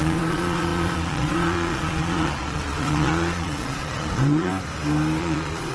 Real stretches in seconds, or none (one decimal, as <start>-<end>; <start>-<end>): 4.5-5.2